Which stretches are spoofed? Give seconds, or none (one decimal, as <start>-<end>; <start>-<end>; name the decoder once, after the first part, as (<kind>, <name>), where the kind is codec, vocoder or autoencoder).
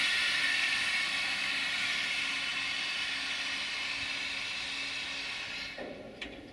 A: none